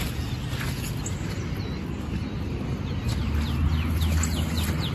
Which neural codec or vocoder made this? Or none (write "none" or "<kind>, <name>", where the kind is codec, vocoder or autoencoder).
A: none